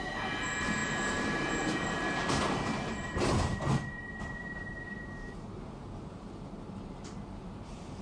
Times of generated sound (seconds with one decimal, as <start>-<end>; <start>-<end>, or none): 0.0-8.0